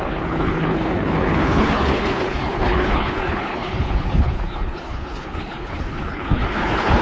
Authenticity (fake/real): fake